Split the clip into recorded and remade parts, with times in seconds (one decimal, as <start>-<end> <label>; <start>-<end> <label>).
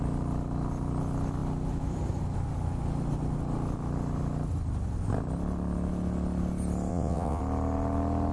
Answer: 0.0-6.9 recorded; 6.9-7.4 remade; 7.4-8.3 recorded